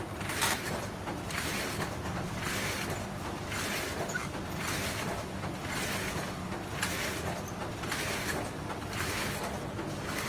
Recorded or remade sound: recorded